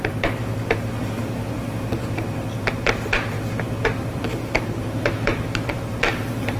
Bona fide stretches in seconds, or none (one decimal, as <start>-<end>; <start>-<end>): none